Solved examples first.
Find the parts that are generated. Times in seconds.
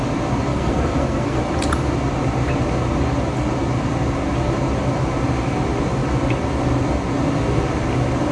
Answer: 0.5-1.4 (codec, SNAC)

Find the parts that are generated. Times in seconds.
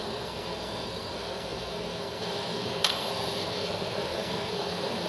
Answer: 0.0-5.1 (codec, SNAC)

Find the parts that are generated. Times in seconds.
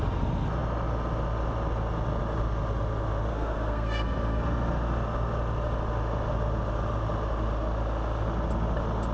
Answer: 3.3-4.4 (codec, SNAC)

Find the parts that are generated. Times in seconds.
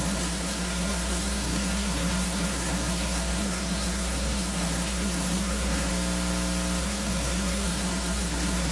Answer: 0.0-5.9 (codec, SNAC); 6.8-8.7